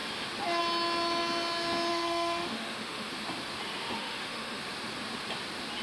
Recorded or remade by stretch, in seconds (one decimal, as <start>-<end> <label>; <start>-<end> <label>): 0.0-1.9 recorded; 1.9-3.1 remade; 3.1-4.0 recorded; 4.0-4.6 remade; 4.6-5.8 recorded